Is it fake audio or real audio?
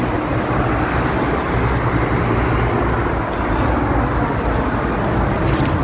real